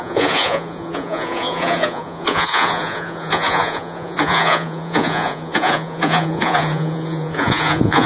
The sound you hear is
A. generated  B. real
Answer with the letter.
A